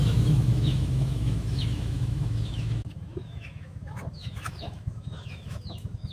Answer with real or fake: fake